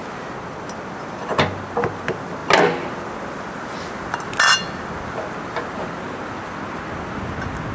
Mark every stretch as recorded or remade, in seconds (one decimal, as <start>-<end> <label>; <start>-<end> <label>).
0.0-7.7 recorded